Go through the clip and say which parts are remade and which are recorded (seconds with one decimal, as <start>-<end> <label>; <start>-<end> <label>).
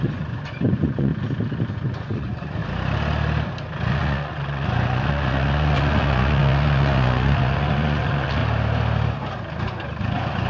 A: 0.0-1.1 remade; 1.1-1.7 recorded; 1.7-2.6 remade; 2.6-3.9 recorded; 3.9-8.4 remade; 8.4-10.0 recorded; 10.0-10.5 remade